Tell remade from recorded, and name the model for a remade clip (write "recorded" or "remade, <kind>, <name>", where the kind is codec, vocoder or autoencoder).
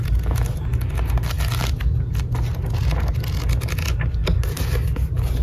recorded